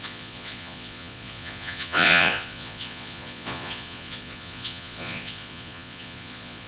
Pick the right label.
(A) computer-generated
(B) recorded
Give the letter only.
A